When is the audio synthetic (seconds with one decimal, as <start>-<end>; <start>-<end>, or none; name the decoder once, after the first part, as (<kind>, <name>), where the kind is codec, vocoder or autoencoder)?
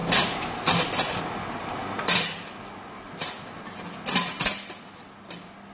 none